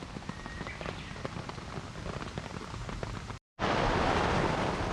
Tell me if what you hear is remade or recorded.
recorded